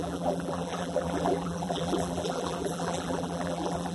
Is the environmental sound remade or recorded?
remade